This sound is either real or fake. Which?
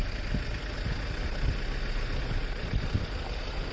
real